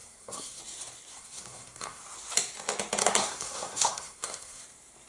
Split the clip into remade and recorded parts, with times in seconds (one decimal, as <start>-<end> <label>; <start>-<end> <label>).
0.0-0.6 remade; 0.6-1.1 recorded; 1.1-2.0 remade; 2.0-3.0 recorded; 3.0-4.6 remade; 4.6-5.1 recorded